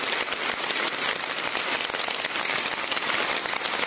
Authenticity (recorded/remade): recorded